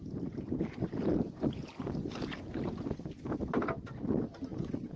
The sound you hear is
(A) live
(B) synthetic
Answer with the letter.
A